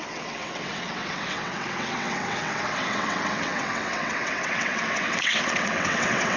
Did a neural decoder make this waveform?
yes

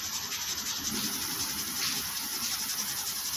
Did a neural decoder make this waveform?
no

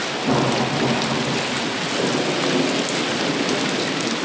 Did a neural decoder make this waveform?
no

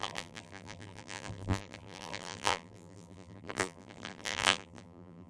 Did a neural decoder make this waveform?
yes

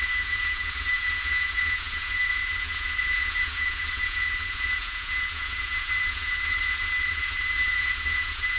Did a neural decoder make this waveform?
yes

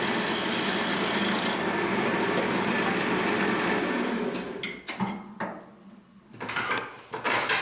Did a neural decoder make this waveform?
no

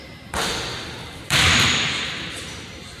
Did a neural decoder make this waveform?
yes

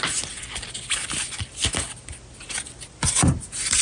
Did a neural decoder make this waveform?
no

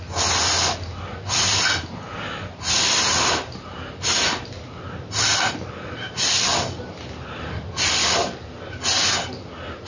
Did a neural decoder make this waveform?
no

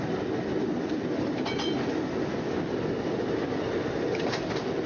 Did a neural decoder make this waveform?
no